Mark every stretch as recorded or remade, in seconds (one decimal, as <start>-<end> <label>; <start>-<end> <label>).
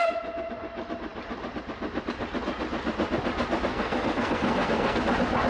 0.0-3.7 recorded; 3.7-5.0 remade; 5.0-5.5 recorded